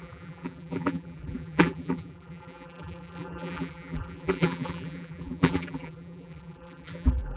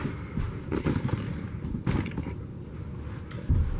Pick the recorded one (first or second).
second